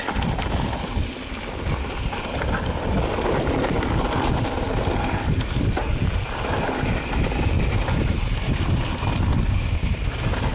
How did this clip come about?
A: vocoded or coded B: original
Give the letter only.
B